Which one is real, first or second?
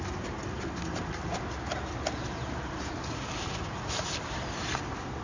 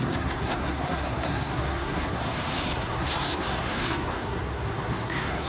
first